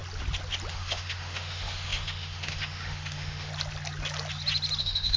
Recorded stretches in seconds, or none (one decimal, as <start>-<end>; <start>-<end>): 0.0-0.7; 3.5-4.8